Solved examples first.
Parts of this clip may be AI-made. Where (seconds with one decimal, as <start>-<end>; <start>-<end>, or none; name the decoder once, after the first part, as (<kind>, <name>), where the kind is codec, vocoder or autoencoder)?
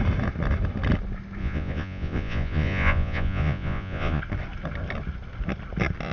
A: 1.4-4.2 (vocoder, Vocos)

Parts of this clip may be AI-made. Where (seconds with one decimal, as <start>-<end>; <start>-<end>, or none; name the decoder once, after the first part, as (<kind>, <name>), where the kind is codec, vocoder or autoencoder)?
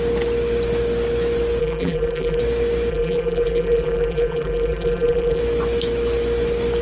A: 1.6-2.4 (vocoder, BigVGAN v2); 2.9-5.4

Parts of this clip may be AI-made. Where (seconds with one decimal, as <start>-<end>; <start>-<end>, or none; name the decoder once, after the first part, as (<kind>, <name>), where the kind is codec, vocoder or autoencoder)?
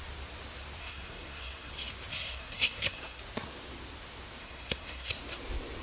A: 0.8-1.7 (codec, SNAC); 2.1-3.2; 4.4-5.1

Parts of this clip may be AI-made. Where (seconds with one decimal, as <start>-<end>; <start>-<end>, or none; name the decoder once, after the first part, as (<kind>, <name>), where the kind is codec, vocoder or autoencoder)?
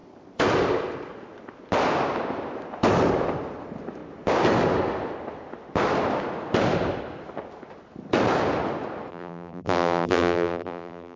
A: 9.1-11.2 (vocoder, BigVGAN v2)